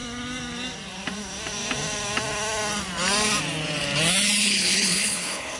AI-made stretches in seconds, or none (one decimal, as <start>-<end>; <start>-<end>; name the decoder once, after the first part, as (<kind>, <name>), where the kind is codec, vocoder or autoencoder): 4.4-5.6 (codec, HILCodec)